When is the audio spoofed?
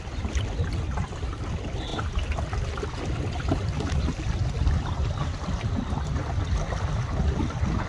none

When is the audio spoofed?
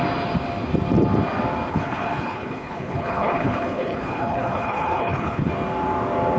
1.7-5.5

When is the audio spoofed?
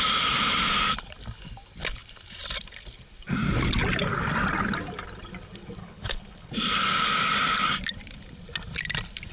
5.8-6.5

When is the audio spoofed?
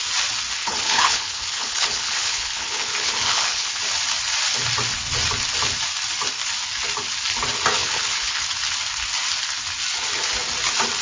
0.6-3.8; 7.8-8.4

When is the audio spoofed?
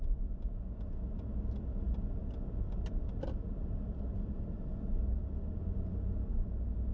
none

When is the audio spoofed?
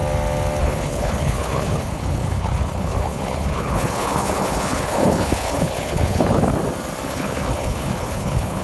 0.6-6.5; 7.1-8.6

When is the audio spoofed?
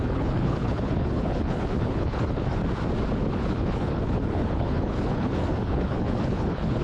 0.0-2.6; 3.3-6.8